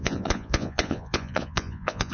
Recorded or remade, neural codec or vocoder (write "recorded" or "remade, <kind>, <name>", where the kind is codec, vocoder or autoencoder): remade, vocoder, Vocos